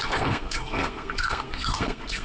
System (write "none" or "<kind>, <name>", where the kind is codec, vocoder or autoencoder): codec, SNAC